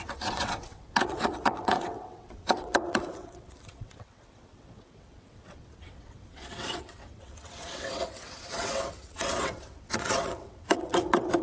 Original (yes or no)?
no